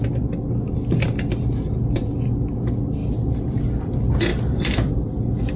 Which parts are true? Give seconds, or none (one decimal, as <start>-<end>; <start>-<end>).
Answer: 0.0-3.0; 3.7-4.3; 4.9-5.6